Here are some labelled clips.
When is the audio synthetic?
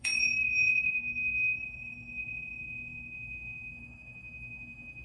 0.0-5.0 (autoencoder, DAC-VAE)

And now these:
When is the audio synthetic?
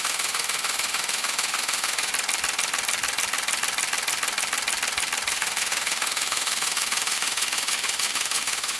0.0-2.1 (autoencoder, DAC-VAE); 5.3-8.8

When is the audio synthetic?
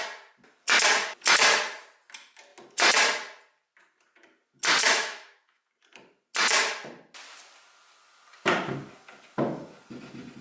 4.8-5.7 (autoencoder, DAC-VAE)